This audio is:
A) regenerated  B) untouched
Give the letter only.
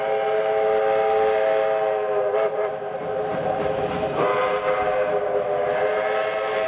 B